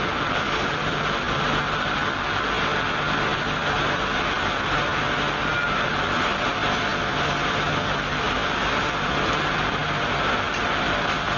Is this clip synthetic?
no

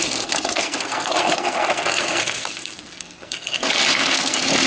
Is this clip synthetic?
yes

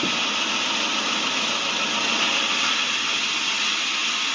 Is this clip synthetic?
no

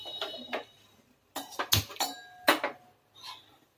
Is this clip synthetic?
no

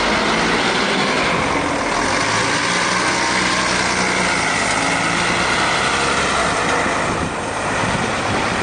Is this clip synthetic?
no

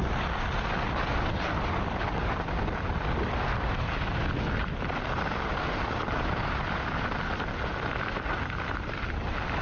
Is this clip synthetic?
no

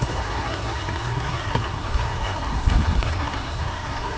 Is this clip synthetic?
yes